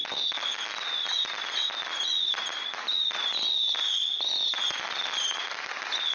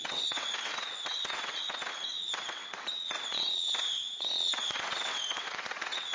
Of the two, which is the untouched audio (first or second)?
first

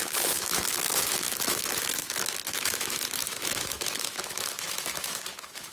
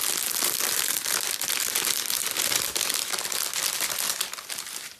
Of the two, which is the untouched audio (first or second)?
second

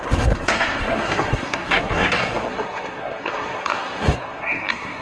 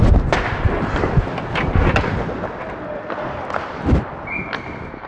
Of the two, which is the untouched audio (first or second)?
second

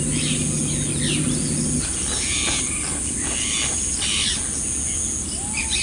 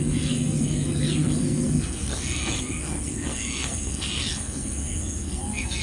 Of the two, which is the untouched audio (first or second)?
first